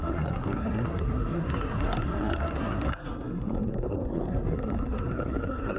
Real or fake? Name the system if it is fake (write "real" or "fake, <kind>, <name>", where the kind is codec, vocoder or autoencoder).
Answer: fake, codec, SNAC